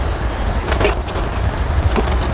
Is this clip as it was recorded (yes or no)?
yes